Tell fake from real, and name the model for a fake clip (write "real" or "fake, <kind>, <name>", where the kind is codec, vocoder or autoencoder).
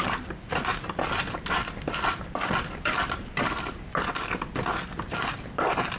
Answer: real